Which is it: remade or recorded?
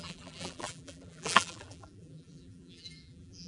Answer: remade